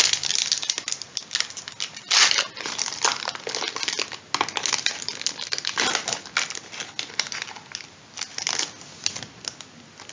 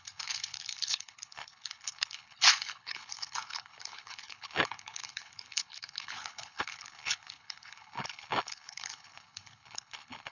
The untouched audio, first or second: first